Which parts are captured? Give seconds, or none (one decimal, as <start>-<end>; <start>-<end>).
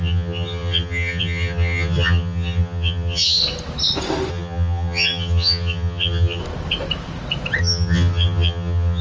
3.4-4.3; 6.4-7.6